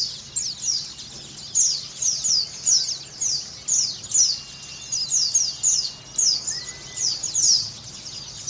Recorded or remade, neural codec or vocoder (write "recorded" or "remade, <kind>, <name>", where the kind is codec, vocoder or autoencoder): recorded